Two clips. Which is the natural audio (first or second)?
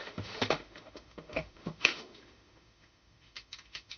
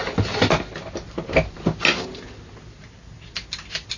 second